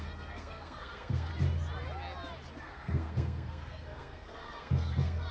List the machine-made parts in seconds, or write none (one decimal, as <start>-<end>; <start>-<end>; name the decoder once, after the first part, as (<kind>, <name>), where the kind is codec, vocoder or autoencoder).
0.0-1.3 (codec, SNAC); 2.6-5.3

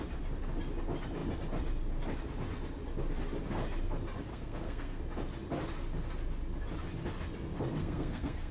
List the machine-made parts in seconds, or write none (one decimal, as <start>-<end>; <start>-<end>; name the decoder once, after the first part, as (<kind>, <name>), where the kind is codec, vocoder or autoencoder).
4.3-5.0 (codec, SNAC); 7.8-8.5

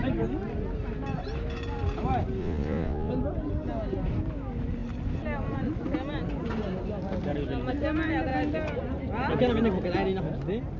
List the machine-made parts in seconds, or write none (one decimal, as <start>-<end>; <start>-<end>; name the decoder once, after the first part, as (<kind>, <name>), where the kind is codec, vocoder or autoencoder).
2.4-3.1 (vocoder, Vocos)

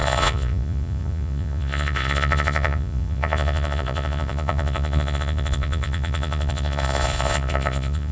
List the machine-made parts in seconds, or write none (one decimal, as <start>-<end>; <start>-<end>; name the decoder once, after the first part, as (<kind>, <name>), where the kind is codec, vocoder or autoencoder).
0.0-8.1 (vocoder, Vocos)